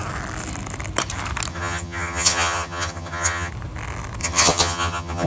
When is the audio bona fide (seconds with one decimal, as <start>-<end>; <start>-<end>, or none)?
0.0-1.5; 3.5-4.2